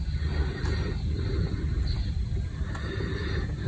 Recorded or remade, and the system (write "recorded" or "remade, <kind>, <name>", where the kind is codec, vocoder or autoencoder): recorded